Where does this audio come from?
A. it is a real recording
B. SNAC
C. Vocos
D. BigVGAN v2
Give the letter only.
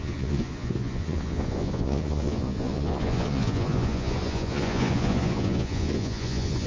C